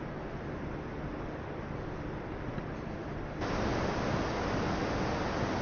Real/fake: real